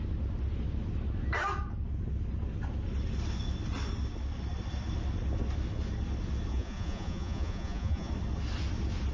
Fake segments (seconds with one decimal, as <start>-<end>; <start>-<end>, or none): 6.5-8.1